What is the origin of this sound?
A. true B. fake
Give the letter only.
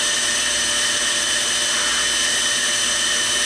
A